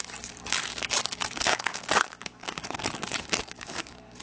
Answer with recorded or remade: remade